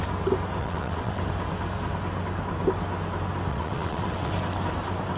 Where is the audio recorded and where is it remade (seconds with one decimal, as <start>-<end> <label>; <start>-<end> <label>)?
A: 0.0-0.6 recorded; 0.6-1.2 remade; 1.2-3.5 recorded; 3.5-4.3 remade; 4.3-5.2 recorded